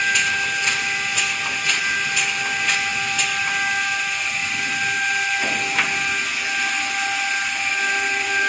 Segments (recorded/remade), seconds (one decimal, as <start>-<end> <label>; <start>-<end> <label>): 0.0-8.5 recorded